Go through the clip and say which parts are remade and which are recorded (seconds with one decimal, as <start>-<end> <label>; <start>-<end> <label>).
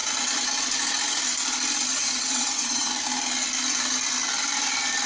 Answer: 0.0-1.9 recorded; 1.9-2.9 remade; 2.9-5.1 recorded